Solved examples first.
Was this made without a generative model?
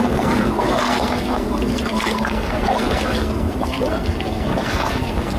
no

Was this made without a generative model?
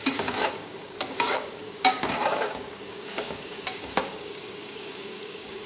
no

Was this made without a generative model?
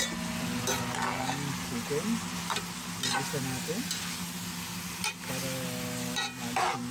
yes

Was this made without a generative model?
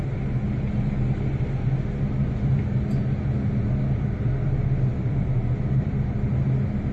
yes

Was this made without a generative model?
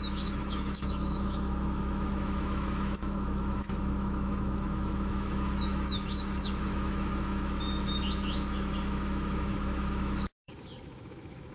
no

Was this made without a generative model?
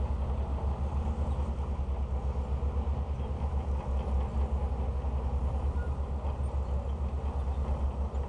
yes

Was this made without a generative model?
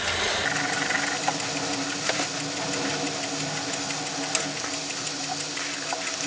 yes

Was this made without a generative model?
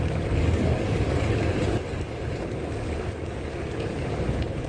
no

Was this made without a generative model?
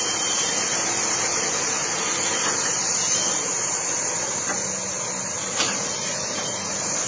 yes